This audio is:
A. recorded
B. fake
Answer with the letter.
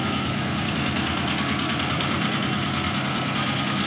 B